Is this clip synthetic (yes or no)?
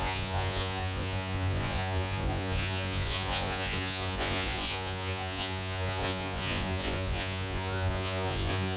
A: yes